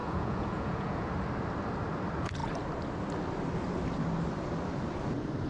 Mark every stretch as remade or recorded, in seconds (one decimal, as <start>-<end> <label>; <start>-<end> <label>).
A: 0.0-1.1 remade; 1.1-5.5 recorded